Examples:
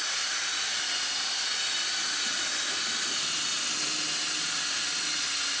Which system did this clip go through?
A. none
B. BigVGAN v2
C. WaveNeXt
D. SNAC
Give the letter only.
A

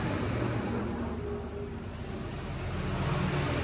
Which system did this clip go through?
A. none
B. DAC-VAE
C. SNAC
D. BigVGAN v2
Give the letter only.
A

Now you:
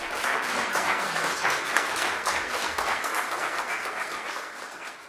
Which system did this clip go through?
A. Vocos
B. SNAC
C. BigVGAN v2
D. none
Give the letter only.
B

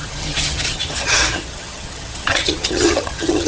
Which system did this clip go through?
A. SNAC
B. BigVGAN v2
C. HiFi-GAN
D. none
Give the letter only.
C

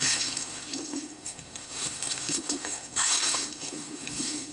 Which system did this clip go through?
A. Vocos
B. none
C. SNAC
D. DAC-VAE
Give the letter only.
C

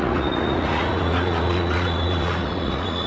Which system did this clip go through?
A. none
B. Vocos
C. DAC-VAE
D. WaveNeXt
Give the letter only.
B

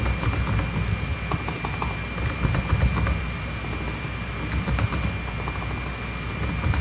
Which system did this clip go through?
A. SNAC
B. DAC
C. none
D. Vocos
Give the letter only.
C